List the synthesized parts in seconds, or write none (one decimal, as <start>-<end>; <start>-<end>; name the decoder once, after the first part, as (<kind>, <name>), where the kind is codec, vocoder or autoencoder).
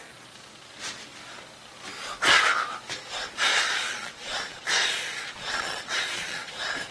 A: 3.5-6.5 (vocoder, Vocos)